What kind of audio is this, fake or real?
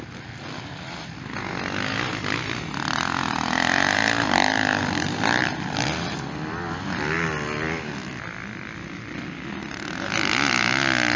real